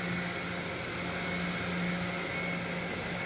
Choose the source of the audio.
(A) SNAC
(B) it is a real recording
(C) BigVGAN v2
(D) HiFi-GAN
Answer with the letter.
B